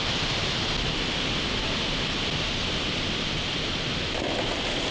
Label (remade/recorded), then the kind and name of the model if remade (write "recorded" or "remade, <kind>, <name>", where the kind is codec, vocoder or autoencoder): recorded